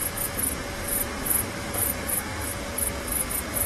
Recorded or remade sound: recorded